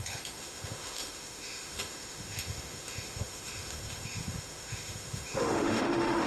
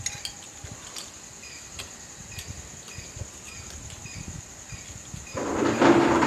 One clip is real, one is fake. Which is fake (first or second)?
first